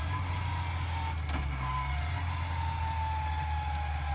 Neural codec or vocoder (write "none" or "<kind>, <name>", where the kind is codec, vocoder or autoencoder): none